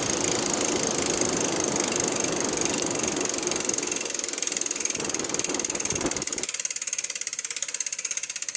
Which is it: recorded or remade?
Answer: recorded